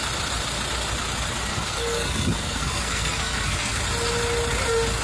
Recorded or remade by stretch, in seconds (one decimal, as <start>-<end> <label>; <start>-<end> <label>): 0.0-1.5 recorded; 1.5-3.8 remade; 3.8-5.0 recorded